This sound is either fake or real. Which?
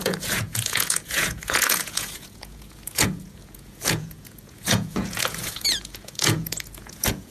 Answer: fake